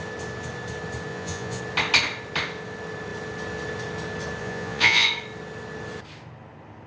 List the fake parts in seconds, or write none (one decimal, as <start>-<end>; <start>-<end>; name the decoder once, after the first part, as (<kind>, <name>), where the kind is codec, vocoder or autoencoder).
1.1-1.6 (vocoder, Vocos); 4.4-5.1